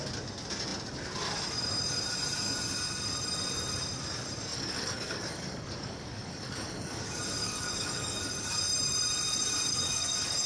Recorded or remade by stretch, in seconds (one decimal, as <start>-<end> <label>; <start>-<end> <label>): 0.0-4.5 recorded; 4.5-7.0 remade; 7.0-7.4 recorded; 7.4-8.3 remade; 8.3-9.7 recorded; 9.7-10.5 remade